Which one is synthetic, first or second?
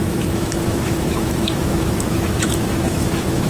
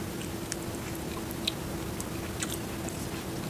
first